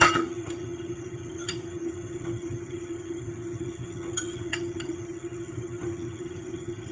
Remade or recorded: remade